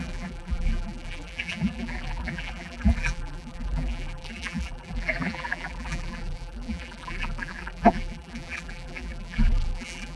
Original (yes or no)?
no